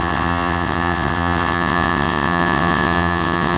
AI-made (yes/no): yes